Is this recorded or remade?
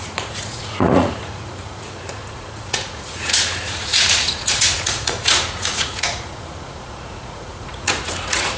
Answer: remade